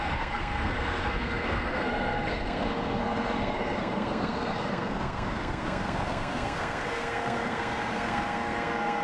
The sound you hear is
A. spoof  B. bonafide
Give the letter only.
A